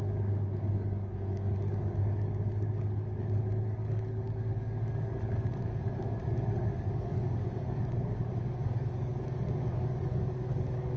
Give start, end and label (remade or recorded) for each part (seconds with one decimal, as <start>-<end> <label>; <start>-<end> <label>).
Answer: 0.0-11.0 remade